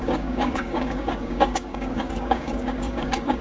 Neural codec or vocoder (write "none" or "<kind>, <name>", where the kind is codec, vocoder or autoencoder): codec, DAC